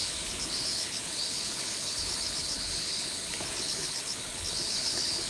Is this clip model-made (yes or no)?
yes